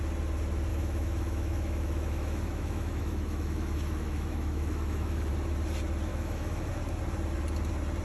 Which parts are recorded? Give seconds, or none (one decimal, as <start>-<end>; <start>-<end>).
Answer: 0.0-0.7; 5.3-6.1; 6.7-8.0